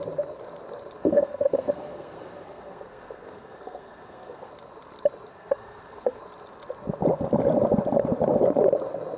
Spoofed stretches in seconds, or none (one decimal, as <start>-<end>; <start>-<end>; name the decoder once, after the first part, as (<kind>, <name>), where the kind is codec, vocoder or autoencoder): 1.0-4.5 (codec, SNAC); 5.3-6.2